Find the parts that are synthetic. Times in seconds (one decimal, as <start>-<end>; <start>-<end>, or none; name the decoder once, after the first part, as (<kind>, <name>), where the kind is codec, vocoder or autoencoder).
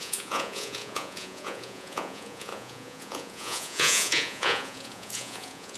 0.0-5.8 (vocoder, Vocos)